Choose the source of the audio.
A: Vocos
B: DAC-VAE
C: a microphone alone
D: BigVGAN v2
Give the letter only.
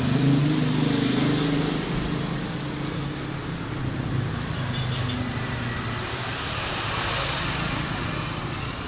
C